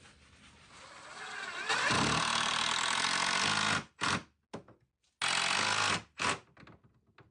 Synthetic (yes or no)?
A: no